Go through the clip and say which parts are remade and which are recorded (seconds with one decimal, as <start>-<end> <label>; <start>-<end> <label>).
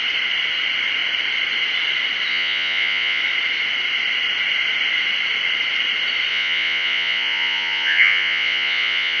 0.0-2.3 recorded; 2.3-3.2 remade; 3.2-6.3 recorded; 6.3-9.2 remade